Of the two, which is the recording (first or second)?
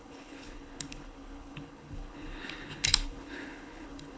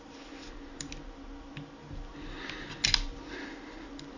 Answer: second